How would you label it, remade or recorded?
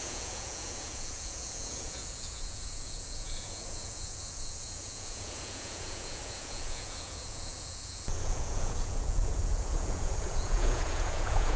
remade